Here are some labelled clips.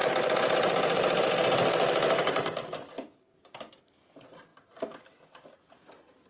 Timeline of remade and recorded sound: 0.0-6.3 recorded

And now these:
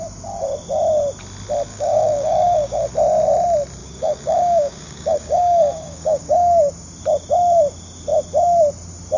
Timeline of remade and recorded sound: 0.0-1.7 recorded; 1.7-2.9 remade; 2.9-3.8 recorded; 3.8-6.7 remade; 6.7-9.2 recorded

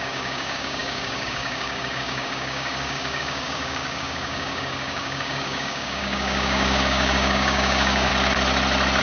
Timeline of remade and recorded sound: 0.0-8.1 remade; 8.1-9.0 recorded

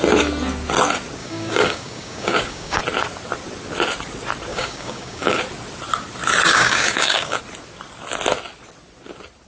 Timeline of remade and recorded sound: 0.0-1.2 recorded; 1.2-2.8 remade; 2.8-4.5 recorded; 4.5-5.4 remade; 5.4-6.5 recorded; 6.5-7.4 remade; 7.4-9.5 recorded

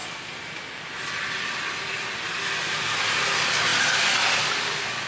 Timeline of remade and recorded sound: 0.0-5.1 recorded

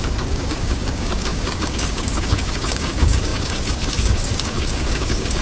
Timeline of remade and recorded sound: 0.0-5.4 remade